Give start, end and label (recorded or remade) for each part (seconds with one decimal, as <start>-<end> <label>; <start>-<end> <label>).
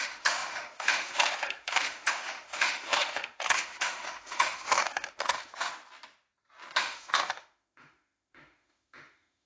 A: 0.0-5.7 remade; 5.7-6.8 recorded; 6.8-9.5 remade